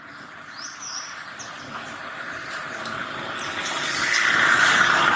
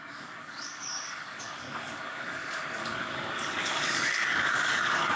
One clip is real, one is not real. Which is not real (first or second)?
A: second